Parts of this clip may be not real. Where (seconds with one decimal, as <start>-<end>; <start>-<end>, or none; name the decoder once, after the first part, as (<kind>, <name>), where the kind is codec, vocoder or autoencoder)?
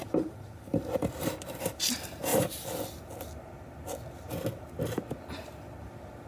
0.0-1.0 (vocoder, BigVGAN v2); 1.6-2.3